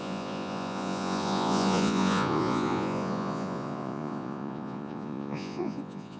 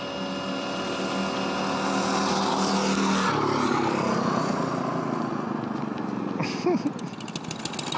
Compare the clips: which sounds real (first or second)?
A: second